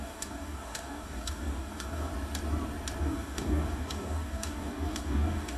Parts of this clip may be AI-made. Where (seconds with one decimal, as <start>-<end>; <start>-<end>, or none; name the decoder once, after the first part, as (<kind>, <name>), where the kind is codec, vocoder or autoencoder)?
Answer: 0.0-2.1 (codec, DAC); 3.0-5.6